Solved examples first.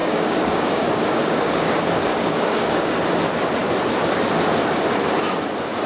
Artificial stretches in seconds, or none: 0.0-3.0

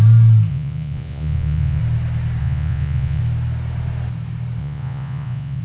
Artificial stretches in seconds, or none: 0.5-1.8; 2.4-3.2; 4.6-5.6

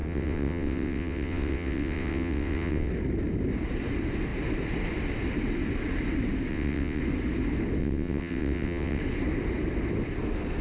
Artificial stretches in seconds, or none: 0.0-2.9; 6.5-7.0; 7.8-9.0

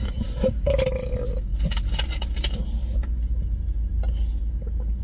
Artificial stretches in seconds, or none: none

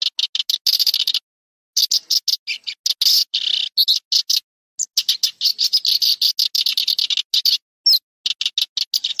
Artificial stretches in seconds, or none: none

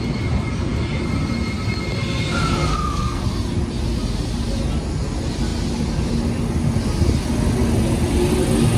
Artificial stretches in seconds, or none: 2.7-3.2

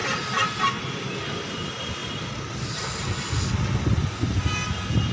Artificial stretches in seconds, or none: none